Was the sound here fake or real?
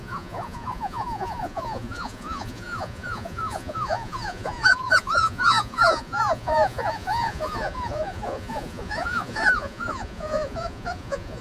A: fake